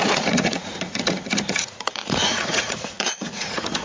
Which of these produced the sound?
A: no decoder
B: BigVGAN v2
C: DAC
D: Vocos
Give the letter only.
D